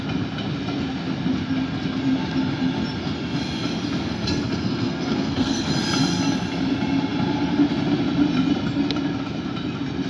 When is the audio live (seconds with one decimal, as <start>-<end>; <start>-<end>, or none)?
0.0-4.1; 5.7-10.1